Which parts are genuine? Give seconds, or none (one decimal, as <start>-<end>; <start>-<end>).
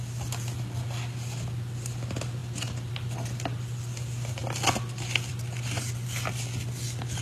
0.0-7.2